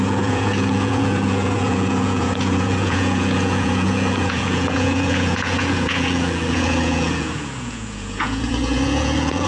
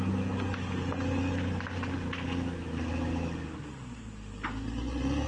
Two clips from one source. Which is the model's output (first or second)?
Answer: first